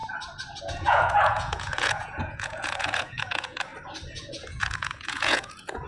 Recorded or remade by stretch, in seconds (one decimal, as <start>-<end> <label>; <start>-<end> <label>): 0.0-0.6 recorded; 0.6-3.7 remade; 3.7-4.3 recorded; 4.3-5.9 remade